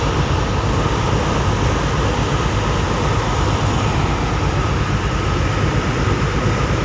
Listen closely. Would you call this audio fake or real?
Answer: real